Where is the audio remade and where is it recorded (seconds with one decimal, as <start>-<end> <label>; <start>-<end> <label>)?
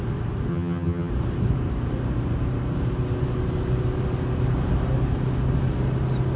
0.0-0.5 recorded; 0.5-1.1 remade; 1.1-6.4 recorded